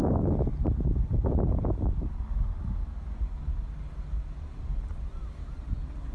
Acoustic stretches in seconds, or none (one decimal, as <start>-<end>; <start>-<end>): 0.0-6.1

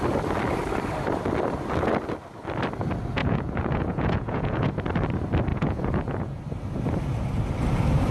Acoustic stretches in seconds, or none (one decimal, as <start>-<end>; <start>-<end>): 0.0-3.2; 4.7-5.5; 6.4-8.1

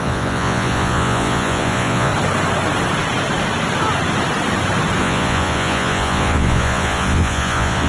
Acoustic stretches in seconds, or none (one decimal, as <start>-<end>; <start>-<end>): 2.1-5.0

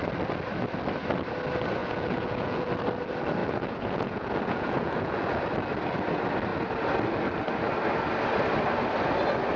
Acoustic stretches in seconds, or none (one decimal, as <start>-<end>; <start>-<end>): 0.0-1.8; 2.7-3.4; 5.4-9.6

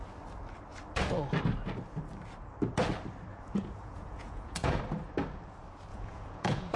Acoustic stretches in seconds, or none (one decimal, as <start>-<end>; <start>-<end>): 0.0-3.3; 4.8-5.9